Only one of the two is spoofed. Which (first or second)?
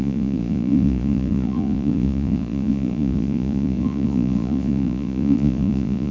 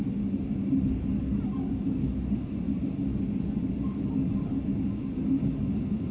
first